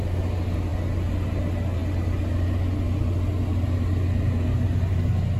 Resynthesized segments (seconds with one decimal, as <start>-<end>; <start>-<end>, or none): none